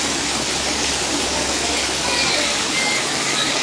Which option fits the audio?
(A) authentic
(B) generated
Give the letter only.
B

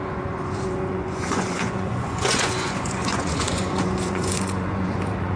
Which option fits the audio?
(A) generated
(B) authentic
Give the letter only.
A